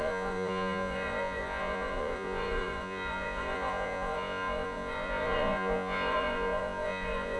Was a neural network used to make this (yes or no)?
yes